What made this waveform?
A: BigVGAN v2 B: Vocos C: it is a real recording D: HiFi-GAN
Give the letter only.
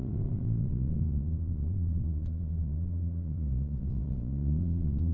B